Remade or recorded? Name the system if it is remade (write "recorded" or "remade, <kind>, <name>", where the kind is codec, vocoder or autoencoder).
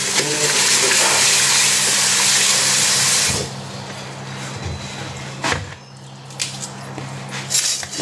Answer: recorded